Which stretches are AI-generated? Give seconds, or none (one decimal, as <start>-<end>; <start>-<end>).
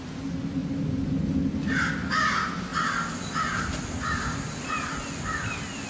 none